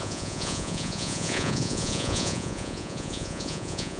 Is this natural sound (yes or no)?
no